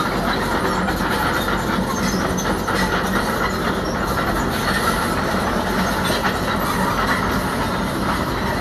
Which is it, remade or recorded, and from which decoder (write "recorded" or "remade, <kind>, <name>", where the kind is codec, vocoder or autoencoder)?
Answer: recorded